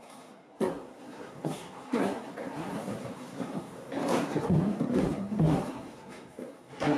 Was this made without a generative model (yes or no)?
no